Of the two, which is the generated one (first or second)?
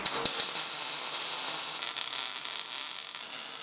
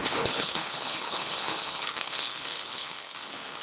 second